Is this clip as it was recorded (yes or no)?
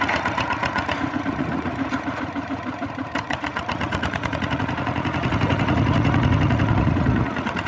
no